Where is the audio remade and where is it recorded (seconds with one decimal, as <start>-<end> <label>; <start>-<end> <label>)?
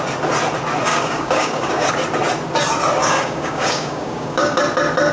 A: 0.0-0.9 recorded; 0.9-1.9 remade; 1.9-3.0 recorded; 3.0-4.6 remade; 4.6-5.1 recorded